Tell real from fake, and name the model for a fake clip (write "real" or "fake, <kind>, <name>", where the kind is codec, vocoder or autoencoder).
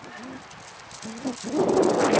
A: real